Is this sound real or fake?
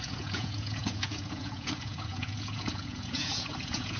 fake